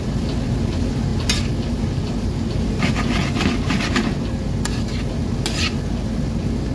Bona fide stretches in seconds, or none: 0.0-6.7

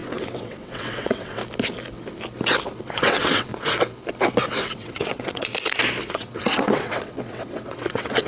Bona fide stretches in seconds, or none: 1.4-2.8; 3.5-4.7; 5.5-6.1

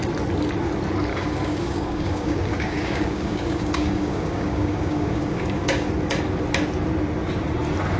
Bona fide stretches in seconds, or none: 0.0-1.1; 5.9-8.0

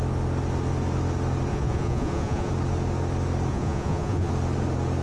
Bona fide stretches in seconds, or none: 0.0-1.5; 2.5-3.5; 4.3-5.0

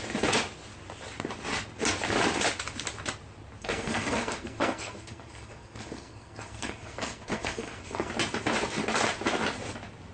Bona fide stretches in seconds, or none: 0.0-3.6; 8.1-10.1

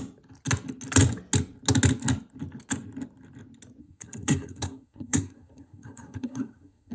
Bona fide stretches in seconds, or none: 0.0-3.8

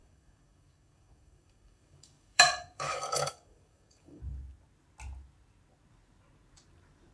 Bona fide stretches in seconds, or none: 4.2-7.1